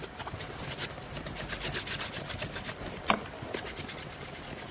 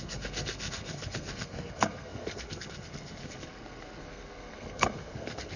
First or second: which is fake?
second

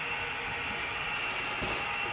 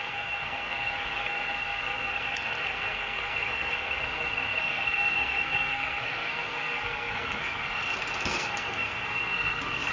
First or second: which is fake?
second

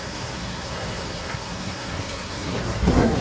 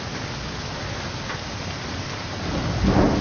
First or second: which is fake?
first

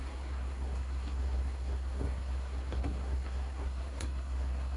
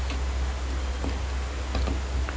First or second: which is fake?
first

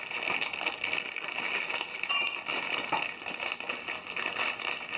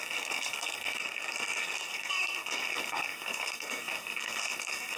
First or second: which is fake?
second